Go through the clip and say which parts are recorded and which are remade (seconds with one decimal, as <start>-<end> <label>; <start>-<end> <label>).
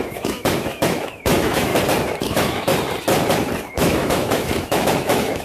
0.0-1.7 remade; 1.7-2.2 recorded; 2.2-2.7 remade; 2.7-3.7 recorded; 3.7-5.4 remade